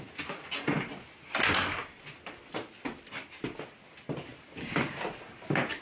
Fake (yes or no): no